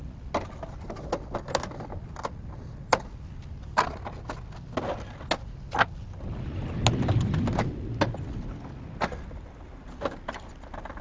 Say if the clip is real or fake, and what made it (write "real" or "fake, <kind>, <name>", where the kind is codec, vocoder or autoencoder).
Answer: real